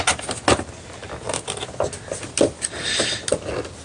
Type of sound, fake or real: real